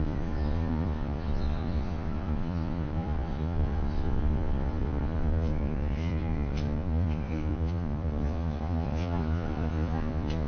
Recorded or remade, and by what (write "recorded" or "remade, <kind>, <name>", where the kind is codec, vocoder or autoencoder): remade, vocoder, Vocos